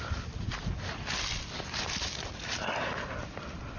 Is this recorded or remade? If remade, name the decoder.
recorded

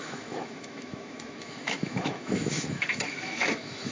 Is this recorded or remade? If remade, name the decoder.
remade, autoencoder, DAC-VAE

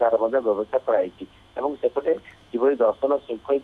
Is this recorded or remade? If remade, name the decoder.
remade, autoencoder, DAC-VAE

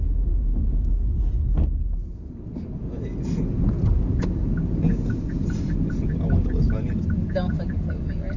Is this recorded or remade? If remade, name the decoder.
recorded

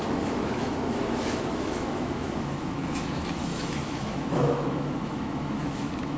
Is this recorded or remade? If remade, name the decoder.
remade, autoencoder, DAC-VAE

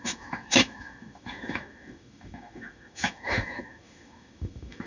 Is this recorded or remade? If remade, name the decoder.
remade, autoencoder, DAC-VAE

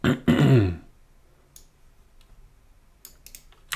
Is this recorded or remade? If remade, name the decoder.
recorded